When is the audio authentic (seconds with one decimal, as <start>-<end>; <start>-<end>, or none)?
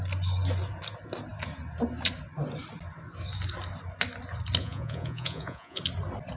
0.0-4.6; 5.8-6.4